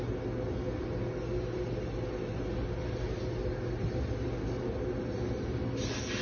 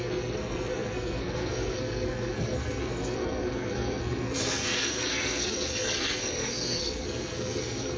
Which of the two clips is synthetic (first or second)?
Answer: second